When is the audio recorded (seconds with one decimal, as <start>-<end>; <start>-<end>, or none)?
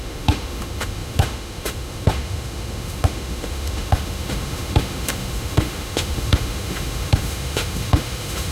none